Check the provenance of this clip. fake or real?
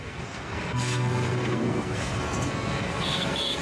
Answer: fake